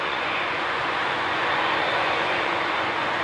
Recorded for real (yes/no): no